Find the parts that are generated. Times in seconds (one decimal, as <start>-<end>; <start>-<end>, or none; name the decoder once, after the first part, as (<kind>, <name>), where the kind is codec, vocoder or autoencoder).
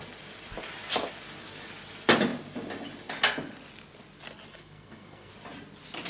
4.5-5.3 (codec, SNAC)